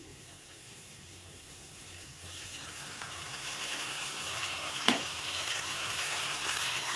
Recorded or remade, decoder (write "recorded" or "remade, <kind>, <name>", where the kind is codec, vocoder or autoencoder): remade, codec, SNAC